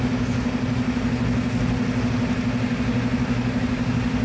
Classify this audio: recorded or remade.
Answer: recorded